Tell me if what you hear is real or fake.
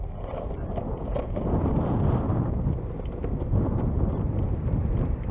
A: real